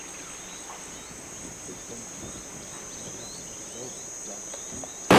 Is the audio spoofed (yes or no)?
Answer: no